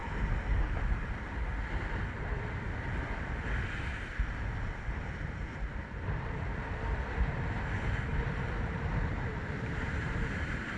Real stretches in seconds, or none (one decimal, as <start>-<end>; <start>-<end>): 0.6-8.1